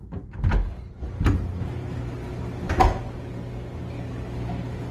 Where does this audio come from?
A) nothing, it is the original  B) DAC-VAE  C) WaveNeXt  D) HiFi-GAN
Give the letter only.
A